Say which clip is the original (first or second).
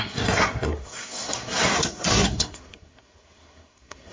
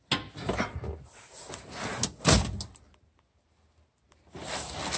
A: second